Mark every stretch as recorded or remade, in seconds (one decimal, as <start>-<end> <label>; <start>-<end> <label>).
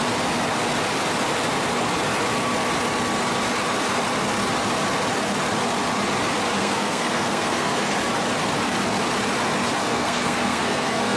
0.0-6.6 recorded; 6.6-7.9 remade; 7.9-9.8 recorded; 9.8-11.2 remade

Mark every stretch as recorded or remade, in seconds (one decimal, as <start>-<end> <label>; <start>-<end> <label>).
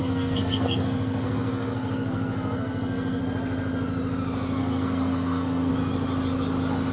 0.0-3.2 remade; 3.2-4.6 recorded; 4.6-5.7 remade; 5.7-6.9 recorded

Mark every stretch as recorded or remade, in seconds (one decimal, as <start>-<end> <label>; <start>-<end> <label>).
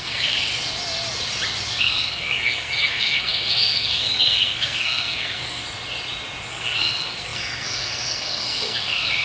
0.0-0.5 remade; 0.5-1.8 recorded; 1.8-5.6 remade; 5.6-6.5 recorded; 6.5-9.2 remade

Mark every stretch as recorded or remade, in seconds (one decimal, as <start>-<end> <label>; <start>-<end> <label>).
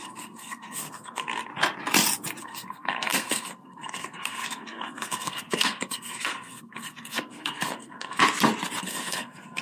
0.0-1.5 remade; 1.5-2.4 recorded; 2.4-8.2 remade; 8.2-8.8 recorded; 8.8-9.6 remade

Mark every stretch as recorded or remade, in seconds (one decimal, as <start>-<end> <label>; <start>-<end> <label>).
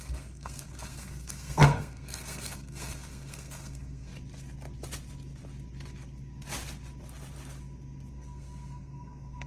0.0-4.1 remade; 4.1-8.1 recorded; 8.1-9.5 remade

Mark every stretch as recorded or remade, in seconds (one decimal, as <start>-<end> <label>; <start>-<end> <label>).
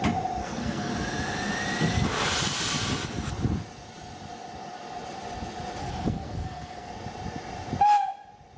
0.0-0.4 recorded; 0.4-0.9 remade; 0.9-5.8 recorded; 5.8-6.9 remade; 6.9-8.6 recorded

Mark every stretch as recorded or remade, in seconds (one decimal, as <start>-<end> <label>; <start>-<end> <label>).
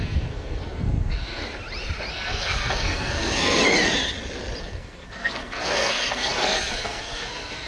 0.0-1.4 remade; 1.4-2.1 recorded; 2.1-3.6 remade; 3.6-4.6 recorded; 4.6-7.7 remade